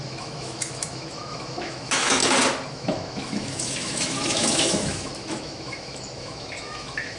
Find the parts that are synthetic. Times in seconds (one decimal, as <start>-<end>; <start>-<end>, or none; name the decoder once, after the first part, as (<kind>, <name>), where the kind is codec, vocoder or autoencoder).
0.0-2.2 (autoencoder, DAC-VAE); 2.7-7.2